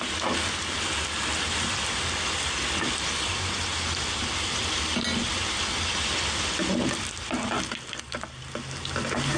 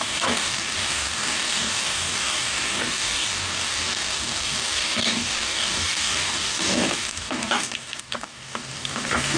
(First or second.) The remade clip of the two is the second